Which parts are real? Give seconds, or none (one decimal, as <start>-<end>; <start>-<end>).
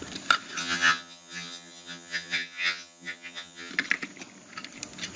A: 0.0-0.6; 3.7-5.2